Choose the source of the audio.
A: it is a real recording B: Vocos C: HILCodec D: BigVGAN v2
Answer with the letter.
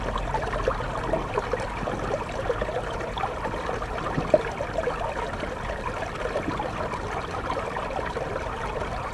A